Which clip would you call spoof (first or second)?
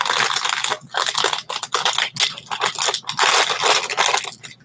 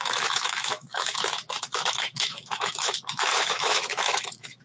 second